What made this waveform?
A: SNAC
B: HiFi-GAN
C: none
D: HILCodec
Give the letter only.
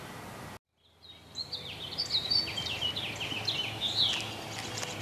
C